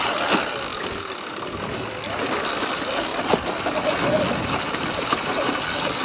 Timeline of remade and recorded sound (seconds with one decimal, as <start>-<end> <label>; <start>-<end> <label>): 0.0-3.1 remade; 3.1-4.6 recorded; 4.6-6.0 remade